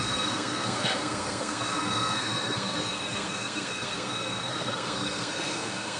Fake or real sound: fake